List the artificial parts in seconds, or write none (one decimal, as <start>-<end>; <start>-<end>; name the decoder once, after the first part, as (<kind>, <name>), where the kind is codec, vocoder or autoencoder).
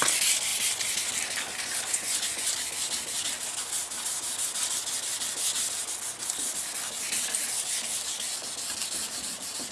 1.9-2.5 (vocoder, Vocos)